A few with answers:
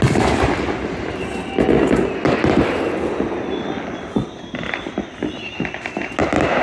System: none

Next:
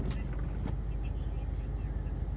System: none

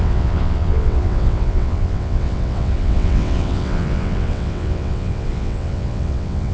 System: vocoder, WaveNeXt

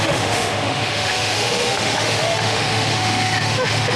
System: autoencoder, DAC-VAE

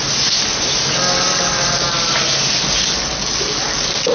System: none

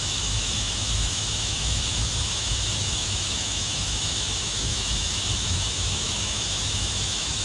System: autoencoder, DAC-VAE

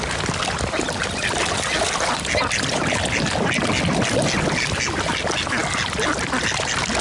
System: none